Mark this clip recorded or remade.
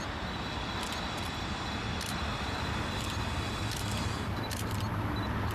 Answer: recorded